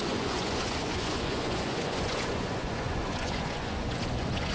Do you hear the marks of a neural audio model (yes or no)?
yes